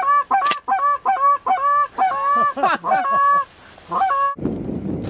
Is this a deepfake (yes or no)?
no